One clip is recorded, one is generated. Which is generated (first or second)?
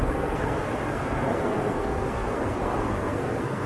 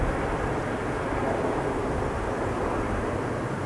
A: first